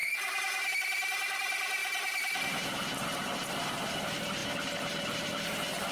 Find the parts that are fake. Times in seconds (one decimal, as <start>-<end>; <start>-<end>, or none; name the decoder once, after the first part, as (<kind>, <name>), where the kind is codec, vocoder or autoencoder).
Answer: 0.0-5.9 (vocoder, BigVGAN v2)